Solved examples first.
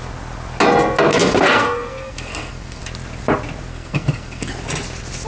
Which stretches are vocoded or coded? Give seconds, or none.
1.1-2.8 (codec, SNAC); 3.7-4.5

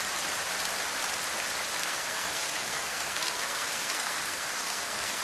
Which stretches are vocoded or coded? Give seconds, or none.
1.8-5.2 (codec, SNAC)

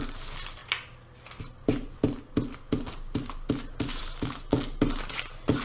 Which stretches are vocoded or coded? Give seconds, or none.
none

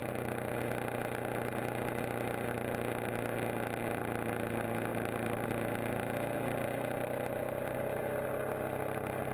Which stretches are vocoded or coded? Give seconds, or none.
none